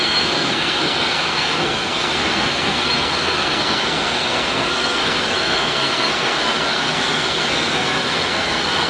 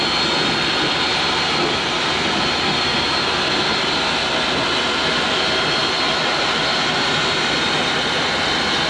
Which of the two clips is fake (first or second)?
first